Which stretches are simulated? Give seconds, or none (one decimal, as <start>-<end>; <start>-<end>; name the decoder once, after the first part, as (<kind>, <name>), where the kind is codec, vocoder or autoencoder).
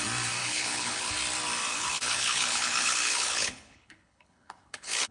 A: 0.4-1.1 (codec, HILCodec); 1.7-5.1